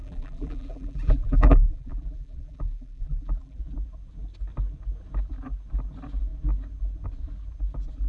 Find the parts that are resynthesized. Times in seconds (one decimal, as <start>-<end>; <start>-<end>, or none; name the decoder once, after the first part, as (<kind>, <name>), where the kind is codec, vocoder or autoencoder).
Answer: 0.0-3.6 (vocoder, BigVGAN v2)